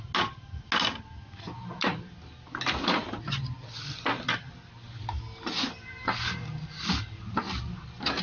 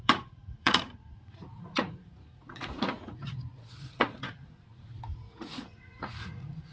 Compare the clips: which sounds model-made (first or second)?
second